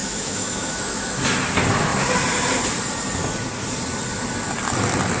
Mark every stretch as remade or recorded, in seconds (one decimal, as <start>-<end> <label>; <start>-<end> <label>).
0.0-1.2 remade; 1.2-5.2 recorded